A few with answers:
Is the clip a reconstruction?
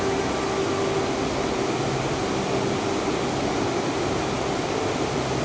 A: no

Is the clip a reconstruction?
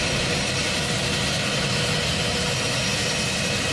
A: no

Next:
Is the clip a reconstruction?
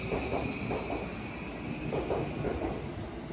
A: no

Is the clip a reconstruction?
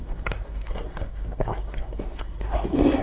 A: yes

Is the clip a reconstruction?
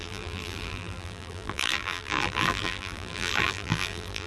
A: yes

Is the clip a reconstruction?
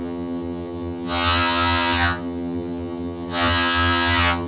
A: yes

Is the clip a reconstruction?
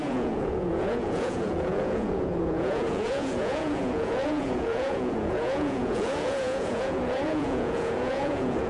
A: yes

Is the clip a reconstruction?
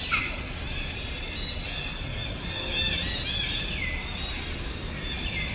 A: no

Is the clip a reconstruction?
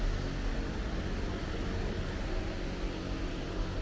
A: no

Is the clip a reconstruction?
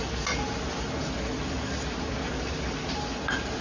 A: no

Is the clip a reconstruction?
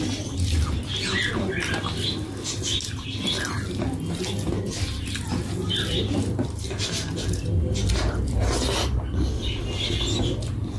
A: no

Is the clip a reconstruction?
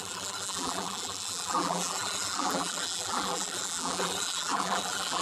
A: yes